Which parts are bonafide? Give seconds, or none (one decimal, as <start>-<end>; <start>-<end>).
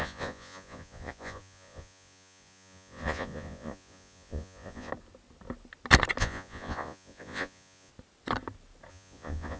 4.9-6.2; 7.9-8.9